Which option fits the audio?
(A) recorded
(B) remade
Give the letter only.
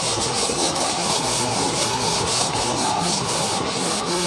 B